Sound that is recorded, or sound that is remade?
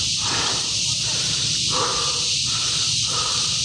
remade